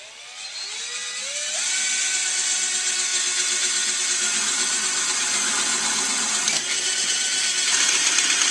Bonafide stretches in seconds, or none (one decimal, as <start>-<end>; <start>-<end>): 0.0-8.5